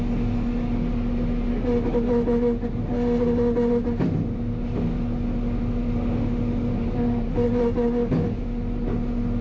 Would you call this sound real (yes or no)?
yes